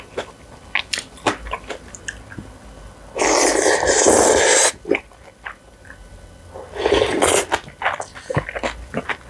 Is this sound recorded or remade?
recorded